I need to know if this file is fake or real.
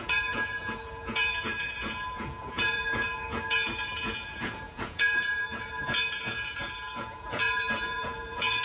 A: fake